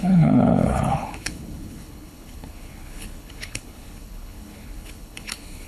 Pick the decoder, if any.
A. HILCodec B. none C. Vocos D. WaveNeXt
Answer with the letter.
A